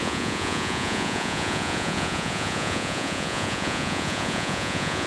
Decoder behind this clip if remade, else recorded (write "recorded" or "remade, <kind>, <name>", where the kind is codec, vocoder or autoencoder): remade, vocoder, Vocos